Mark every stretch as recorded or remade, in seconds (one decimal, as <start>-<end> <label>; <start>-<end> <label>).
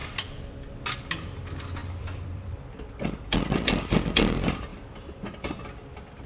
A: 0.0-0.7 remade; 0.7-1.8 recorded; 1.8-2.5 remade; 2.5-4.7 recorded; 4.7-6.3 remade